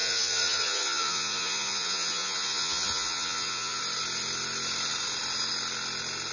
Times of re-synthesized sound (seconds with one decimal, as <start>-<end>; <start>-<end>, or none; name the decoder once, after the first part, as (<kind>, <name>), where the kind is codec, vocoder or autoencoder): 0.0-3.8 (vocoder, Vocos)